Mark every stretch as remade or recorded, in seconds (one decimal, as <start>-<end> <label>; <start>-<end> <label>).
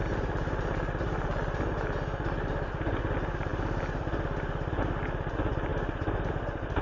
0.0-6.8 recorded